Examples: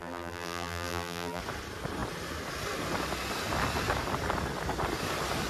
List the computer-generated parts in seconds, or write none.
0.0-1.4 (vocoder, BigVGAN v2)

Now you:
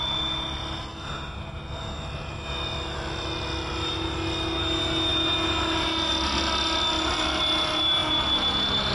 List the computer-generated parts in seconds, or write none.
none